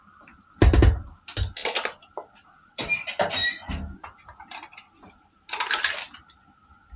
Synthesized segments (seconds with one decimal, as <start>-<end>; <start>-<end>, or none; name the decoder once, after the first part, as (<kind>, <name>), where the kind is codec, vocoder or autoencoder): none